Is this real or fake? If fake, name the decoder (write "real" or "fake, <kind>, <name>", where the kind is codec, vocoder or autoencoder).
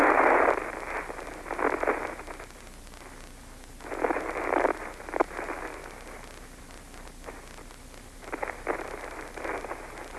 real